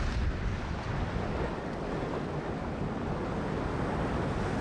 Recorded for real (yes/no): yes